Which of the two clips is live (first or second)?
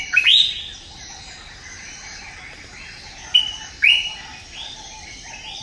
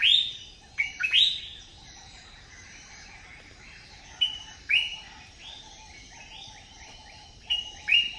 first